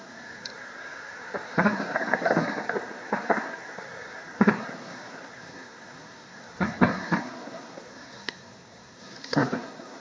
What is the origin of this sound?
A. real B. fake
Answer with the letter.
B